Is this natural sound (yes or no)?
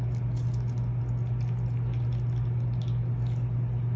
yes